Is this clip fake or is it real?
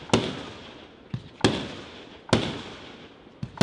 real